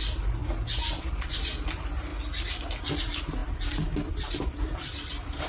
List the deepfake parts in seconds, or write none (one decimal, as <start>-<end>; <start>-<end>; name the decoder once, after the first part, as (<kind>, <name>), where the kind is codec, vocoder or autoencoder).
none